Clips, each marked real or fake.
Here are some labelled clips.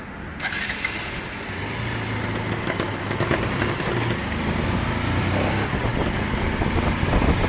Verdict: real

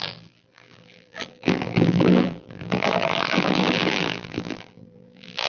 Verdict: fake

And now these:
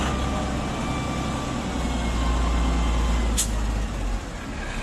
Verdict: real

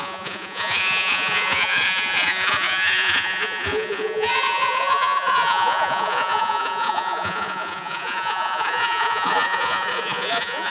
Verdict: fake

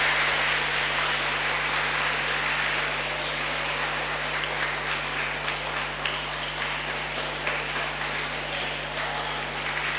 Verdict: real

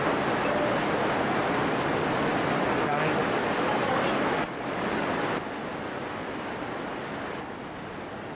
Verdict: real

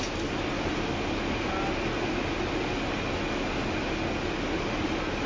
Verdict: real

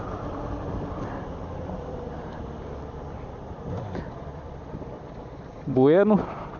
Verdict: fake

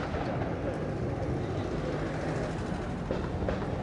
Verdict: real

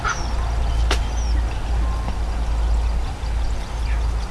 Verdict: real